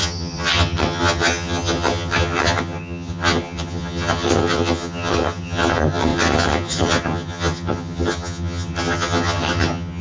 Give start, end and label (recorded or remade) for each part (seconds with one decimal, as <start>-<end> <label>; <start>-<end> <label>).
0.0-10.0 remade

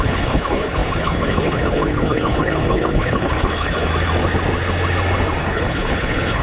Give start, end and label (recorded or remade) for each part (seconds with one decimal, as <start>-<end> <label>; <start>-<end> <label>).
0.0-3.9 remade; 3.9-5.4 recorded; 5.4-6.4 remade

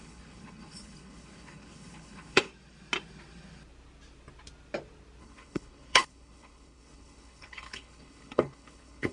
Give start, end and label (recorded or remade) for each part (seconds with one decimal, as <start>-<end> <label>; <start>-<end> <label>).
0.0-2.5 remade; 2.5-5.2 recorded; 5.2-9.1 remade

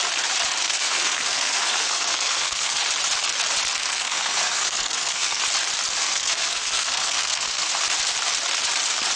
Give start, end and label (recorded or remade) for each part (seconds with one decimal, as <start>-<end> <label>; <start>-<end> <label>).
0.0-0.6 recorded; 0.6-2.8 remade; 2.8-3.8 recorded; 3.8-5.4 remade; 5.4-6.0 recorded; 6.0-7.7 remade; 7.7-9.2 recorded

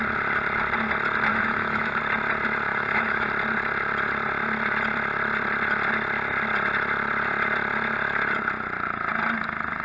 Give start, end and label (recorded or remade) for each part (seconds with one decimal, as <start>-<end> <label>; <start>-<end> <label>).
0.0-1.3 recorded; 1.3-2.0 remade; 2.0-2.7 recorded; 2.7-3.3 remade; 3.3-9.8 recorded

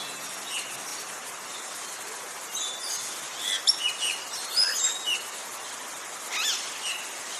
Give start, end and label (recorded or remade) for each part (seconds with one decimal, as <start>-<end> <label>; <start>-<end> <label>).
0.0-7.4 recorded

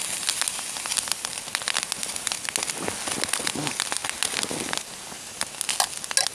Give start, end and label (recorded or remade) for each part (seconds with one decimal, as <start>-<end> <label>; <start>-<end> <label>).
0.0-6.3 recorded

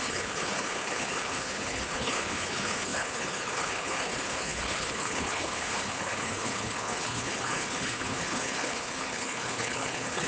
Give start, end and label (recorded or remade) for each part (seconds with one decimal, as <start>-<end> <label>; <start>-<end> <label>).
0.0-10.3 remade